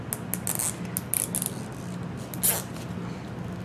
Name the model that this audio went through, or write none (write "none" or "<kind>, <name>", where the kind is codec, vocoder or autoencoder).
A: none